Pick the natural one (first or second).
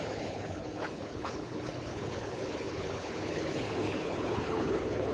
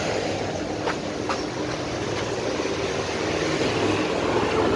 second